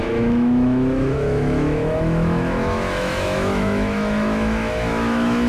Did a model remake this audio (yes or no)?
yes